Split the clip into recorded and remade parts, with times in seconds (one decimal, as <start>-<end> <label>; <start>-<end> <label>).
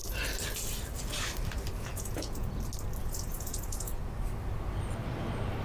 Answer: 0.0-1.9 recorded; 1.9-2.5 remade; 2.5-3.0 recorded; 3.0-4.1 remade; 4.1-5.6 recorded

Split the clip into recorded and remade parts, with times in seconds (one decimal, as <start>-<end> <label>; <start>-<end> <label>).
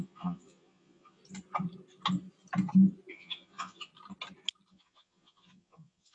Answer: 0.0-1.2 remade; 1.2-3.1 recorded; 3.1-3.9 remade; 3.9-4.7 recorded; 4.7-6.1 remade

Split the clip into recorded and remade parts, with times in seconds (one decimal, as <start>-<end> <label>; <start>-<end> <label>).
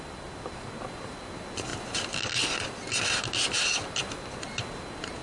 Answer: 0.0-5.2 recorded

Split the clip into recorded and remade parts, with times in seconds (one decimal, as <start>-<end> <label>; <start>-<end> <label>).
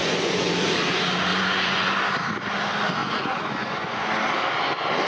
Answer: 0.0-0.5 remade; 0.5-1.3 recorded; 1.3-1.9 remade; 1.9-3.0 recorded; 3.0-4.1 remade; 4.1-5.1 recorded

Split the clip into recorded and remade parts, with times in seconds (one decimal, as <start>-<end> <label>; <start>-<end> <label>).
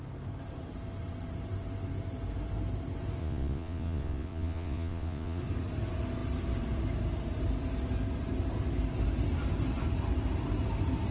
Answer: 0.0-3.2 recorded; 3.2-5.4 remade; 5.4-11.1 recorded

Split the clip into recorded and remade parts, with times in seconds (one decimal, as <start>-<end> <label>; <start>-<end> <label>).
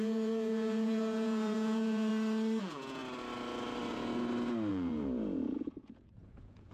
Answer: 0.0-2.1 remade; 2.1-2.6 recorded; 2.6-3.0 remade; 3.0-4.7 recorded; 4.7-6.7 remade